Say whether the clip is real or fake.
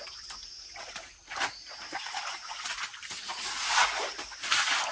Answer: real